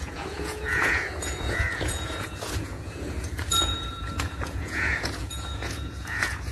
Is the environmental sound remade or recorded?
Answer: remade